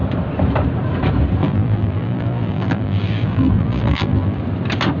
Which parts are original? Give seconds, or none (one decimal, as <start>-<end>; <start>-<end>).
0.0-1.4; 4.4-5.0